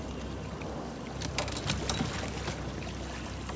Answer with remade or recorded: recorded